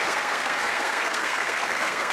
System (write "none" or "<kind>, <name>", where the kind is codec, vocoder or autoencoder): codec, SNAC